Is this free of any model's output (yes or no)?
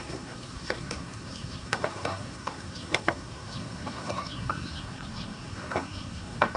no